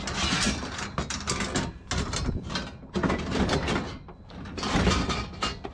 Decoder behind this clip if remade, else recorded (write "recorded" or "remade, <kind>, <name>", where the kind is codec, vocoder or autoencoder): recorded